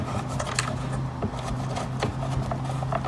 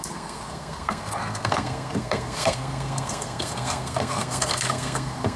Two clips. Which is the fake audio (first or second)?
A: second